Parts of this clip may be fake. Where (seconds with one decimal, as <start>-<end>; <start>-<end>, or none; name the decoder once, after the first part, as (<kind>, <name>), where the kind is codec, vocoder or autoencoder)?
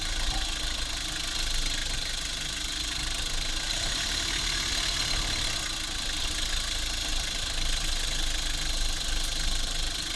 none